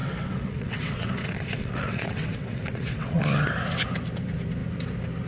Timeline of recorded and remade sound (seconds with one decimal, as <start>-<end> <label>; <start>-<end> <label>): 0.0-3.2 remade; 3.2-5.3 recorded